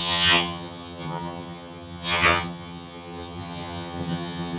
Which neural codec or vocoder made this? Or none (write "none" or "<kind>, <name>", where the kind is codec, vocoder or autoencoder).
vocoder, HiFi-GAN